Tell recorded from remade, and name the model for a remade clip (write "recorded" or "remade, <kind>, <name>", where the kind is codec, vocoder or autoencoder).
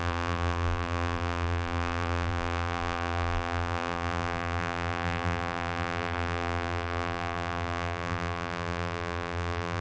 remade, vocoder, BigVGAN v2